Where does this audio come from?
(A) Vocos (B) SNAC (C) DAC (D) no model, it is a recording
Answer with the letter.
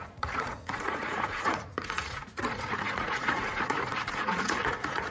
A